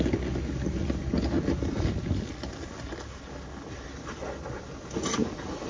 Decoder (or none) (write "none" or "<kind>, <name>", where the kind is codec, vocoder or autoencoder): none